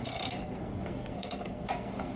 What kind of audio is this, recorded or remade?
remade